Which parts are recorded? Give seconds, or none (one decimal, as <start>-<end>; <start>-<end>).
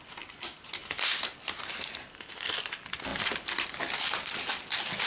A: 0.0-5.1